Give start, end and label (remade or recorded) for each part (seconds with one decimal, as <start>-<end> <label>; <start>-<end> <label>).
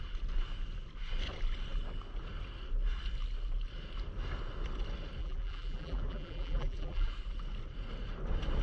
0.0-5.2 recorded; 5.2-7.1 remade; 7.1-8.6 recorded